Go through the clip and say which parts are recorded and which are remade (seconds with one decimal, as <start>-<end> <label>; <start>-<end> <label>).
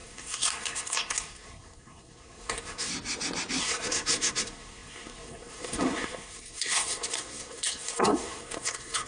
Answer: 0.0-2.9 remade; 2.9-3.6 recorded; 3.6-9.1 remade